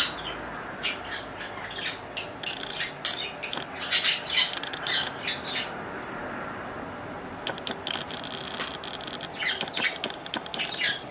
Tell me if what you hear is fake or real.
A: real